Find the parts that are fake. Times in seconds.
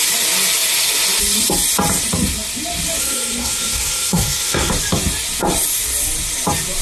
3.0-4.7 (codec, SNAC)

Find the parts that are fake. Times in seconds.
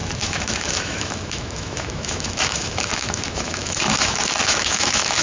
0.0-5.2 (autoencoder, DAC-VAE)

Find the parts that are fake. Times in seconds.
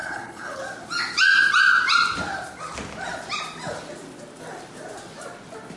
0.0-0.6 (codec, HILCodec)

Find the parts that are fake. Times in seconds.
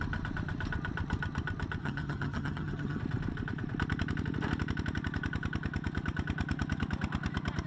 1.8-3.0 (vocoder, HiFi-GAN)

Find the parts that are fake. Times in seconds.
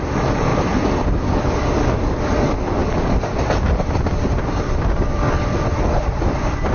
0.0-0.5 (vocoder, BigVGAN v2); 1.4-2.8; 3.6-6.7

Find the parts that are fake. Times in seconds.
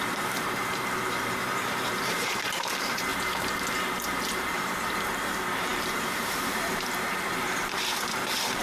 0.0-3.1 (vocoder, BigVGAN v2); 4.3-8.6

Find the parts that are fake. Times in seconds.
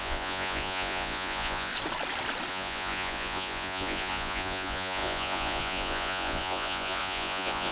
0.0-1.7 (vocoder, Vocos); 2.5-7.7